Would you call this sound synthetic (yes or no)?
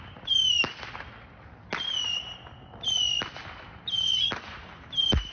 no